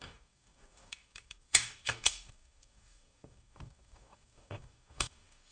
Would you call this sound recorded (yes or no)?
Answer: no